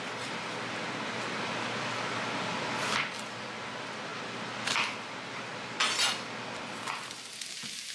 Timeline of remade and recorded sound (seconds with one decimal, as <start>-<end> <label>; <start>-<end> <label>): 0.0-7.9 recorded